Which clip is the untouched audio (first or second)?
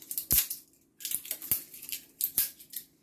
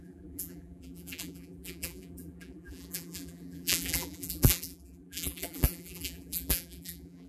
first